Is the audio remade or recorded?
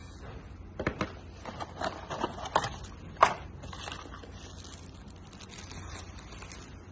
recorded